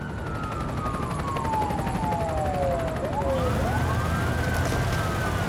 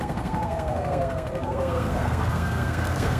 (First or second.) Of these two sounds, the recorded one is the first